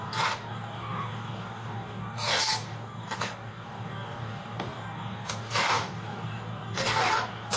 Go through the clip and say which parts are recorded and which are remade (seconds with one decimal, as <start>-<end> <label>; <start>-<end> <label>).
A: 0.0-7.6 remade

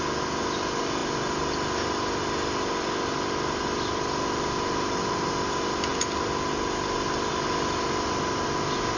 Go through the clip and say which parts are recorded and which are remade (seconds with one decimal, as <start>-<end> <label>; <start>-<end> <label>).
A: 0.0-9.0 recorded